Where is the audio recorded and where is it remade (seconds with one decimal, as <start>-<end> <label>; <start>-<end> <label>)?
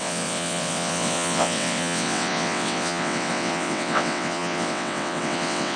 0.0-5.8 remade